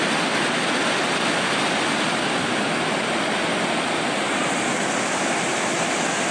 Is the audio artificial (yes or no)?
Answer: no